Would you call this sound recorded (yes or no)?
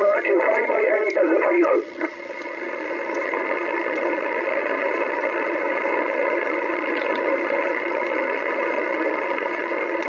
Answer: no